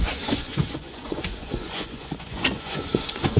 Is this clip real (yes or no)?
no